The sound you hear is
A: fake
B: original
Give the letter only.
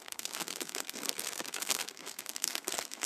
A